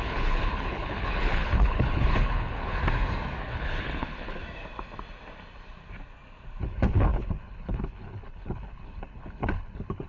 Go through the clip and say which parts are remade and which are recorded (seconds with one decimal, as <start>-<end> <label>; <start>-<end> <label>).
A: 0.0-2.8 remade; 2.8-3.4 recorded; 3.4-4.4 remade; 4.4-6.6 recorded; 6.6-10.1 remade